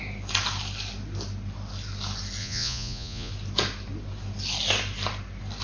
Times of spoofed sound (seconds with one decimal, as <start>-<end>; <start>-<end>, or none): 2.4-3.3

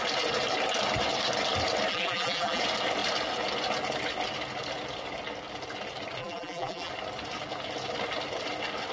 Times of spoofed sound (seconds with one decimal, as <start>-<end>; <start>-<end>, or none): 1.9-2.6; 6.2-6.9

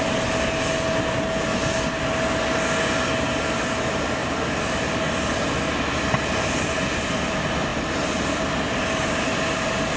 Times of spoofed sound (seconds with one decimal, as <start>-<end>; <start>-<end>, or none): 4.2-4.9

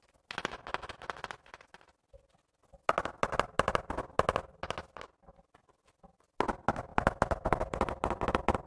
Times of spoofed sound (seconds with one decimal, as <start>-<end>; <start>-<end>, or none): none

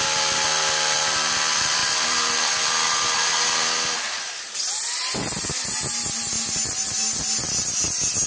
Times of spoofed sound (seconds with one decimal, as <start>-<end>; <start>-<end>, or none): none

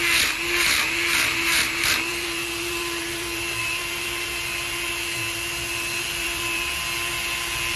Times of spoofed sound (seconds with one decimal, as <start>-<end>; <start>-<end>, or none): 2.1-6.8

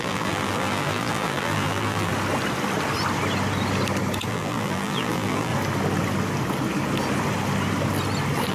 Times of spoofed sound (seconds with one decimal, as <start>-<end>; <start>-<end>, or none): 0.0-2.1; 4.3-5.5

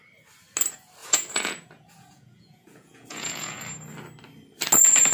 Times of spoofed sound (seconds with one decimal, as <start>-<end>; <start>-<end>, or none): 1.0-3.6